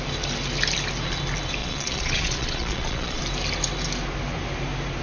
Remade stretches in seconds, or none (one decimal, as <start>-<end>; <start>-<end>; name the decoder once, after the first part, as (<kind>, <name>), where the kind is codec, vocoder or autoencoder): 1.6-3.2 (vocoder, Vocos)